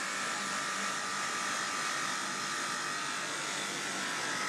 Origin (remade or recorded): recorded